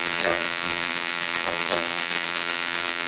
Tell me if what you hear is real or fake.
fake